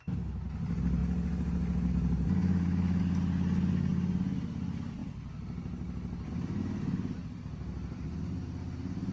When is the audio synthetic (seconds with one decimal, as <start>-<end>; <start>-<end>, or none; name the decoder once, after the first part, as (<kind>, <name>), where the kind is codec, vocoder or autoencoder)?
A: 2.4-3.0 (autoencoder, DAC-VAE)

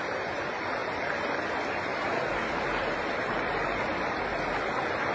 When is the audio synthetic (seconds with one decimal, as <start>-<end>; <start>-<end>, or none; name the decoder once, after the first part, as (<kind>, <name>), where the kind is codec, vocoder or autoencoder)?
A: none

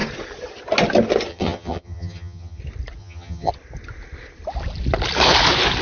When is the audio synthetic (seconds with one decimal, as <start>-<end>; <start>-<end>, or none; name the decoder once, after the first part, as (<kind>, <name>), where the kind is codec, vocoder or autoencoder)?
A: 1.3-2.6 (vocoder, HiFi-GAN); 3.0-3.5

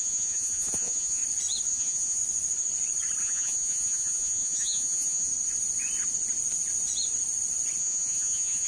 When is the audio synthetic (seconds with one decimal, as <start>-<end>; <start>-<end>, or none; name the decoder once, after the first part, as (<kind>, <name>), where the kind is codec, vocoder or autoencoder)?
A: 0.0-1.2 (vocoder, Vocos); 1.7-2.2; 3.2-5.3; 7.8-8.7

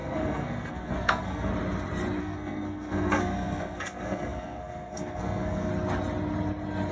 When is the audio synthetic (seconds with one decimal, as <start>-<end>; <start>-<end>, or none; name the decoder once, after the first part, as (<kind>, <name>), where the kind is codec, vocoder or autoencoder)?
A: 0.0-1.5 (codec, SNAC); 2.2-5.7

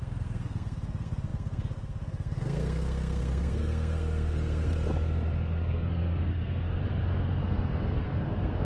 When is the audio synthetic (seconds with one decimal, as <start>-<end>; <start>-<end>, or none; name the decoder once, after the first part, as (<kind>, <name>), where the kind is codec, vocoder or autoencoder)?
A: 0.0-4.7 (codec, SNAC); 5.6-6.8; 7.4-8.6

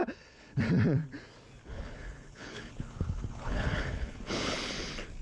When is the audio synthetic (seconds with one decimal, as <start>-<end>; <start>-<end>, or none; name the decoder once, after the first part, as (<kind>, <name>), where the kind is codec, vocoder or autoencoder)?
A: 0.0-0.6 (codec, HILCodec); 1.6-4.7

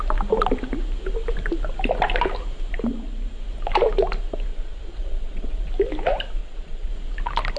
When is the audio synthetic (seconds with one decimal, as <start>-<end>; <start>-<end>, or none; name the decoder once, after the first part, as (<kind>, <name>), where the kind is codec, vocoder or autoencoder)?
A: 4.5-5.7 (vocoder, Vocos); 6.4-6.9